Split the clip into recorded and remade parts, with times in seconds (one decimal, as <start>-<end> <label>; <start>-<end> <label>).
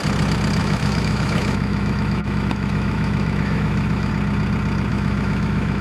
0.0-0.6 recorded; 0.6-4.1 remade; 4.1-4.9 recorded; 4.9-5.8 remade